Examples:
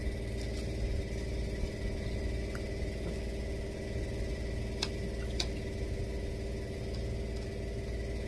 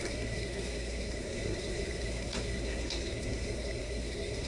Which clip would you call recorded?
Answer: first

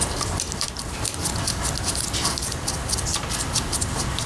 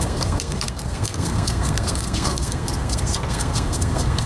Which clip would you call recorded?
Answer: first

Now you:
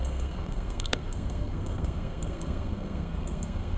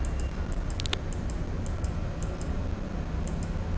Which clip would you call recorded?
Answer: second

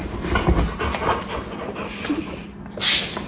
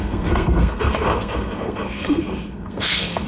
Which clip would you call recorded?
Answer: first